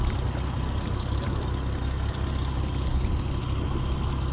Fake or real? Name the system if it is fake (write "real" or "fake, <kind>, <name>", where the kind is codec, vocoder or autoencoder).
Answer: real